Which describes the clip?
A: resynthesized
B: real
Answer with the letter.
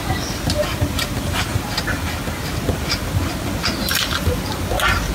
B